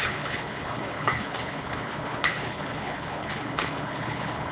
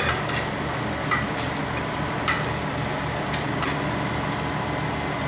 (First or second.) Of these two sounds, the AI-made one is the first